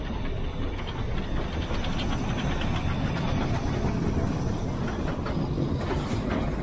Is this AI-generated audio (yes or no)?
no